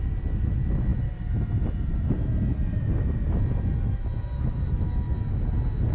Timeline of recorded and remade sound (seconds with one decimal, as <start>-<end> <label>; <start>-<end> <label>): 0.0-5.9 recorded